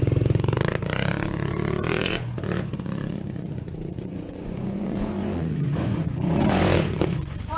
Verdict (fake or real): fake